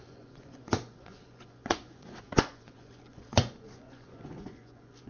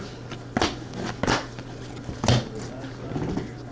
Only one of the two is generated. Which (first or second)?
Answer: first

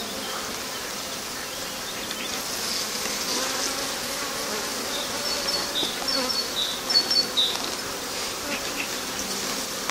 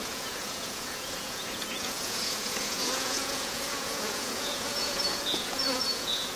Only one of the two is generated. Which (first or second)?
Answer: second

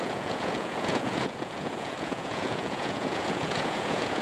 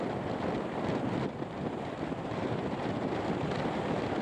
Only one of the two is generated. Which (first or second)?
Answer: first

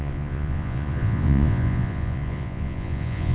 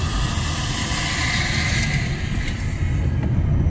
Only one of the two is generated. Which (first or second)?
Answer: first